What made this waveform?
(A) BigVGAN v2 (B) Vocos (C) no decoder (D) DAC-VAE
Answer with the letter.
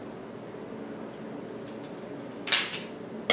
C